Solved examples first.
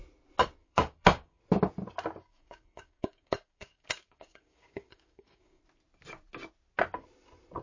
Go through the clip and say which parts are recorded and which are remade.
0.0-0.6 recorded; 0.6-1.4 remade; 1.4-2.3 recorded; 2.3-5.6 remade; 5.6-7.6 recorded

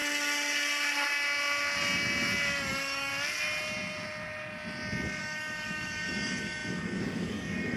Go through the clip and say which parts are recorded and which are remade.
0.0-2.7 recorded; 2.7-3.1 remade; 3.1-5.2 recorded; 5.2-7.8 remade

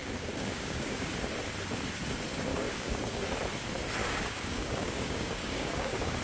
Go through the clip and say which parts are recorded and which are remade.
0.0-1.1 remade; 1.1-2.5 recorded; 2.5-3.2 remade; 3.2-4.0 recorded; 4.0-6.2 remade

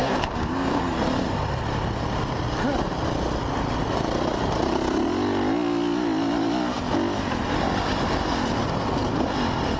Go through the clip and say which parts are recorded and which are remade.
0.0-0.8 remade; 0.8-9.8 recorded

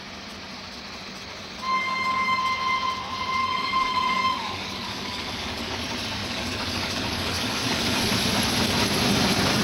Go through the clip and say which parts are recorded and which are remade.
0.0-1.7 recorded; 1.7-2.4 remade; 2.4-3.4 recorded; 3.4-5.8 remade; 5.8-6.2 recorded; 6.2-8.1 remade; 8.1-9.6 recorded